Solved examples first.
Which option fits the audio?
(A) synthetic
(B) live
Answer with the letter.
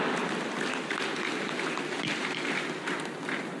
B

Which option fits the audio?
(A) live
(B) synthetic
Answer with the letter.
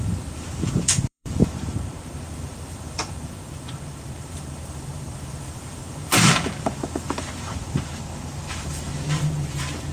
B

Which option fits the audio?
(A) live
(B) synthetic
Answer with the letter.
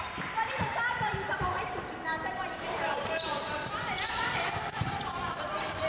B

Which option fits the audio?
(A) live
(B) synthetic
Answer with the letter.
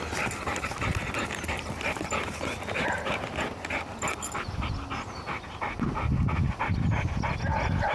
A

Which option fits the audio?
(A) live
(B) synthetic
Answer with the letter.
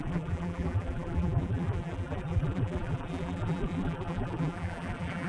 B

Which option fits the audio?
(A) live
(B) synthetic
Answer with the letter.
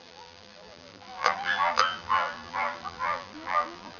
B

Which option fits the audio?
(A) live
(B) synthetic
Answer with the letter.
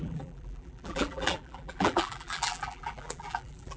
B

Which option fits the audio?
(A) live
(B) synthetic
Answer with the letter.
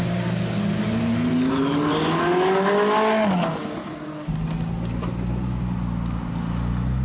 A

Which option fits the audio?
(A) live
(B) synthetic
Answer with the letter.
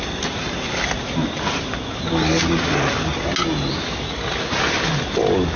A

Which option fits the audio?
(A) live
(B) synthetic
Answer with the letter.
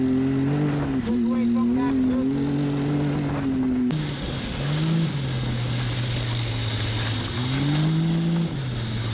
A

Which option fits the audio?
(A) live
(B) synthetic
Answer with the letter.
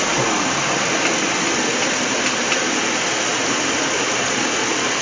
A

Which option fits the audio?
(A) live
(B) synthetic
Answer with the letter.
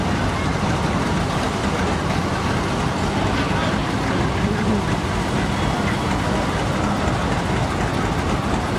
A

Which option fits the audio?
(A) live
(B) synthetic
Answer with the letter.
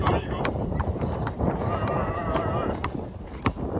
B